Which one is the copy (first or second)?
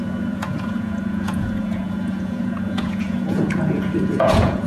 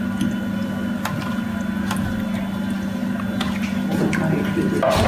first